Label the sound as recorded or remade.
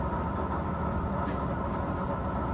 recorded